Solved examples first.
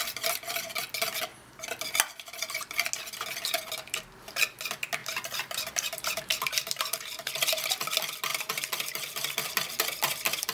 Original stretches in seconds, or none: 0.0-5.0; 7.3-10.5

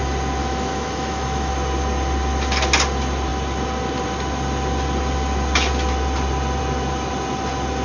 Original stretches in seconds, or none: 0.0-0.4; 1.5-7.8

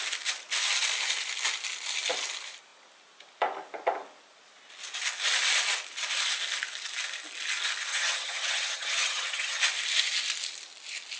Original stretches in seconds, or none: 0.0-7.9; 9.6-11.2

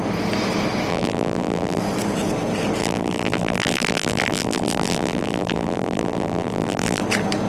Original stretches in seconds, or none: 0.0-0.9; 1.8-2.8; 7.0-7.5

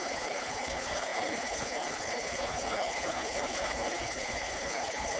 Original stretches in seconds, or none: none